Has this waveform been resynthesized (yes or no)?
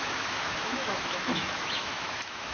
yes